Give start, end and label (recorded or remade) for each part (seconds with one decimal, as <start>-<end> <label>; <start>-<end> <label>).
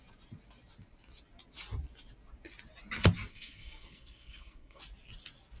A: 0.0-3.3 recorded; 3.3-4.8 remade; 4.8-5.6 recorded